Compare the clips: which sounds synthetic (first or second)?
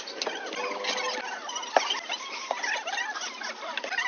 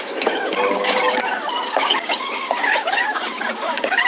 second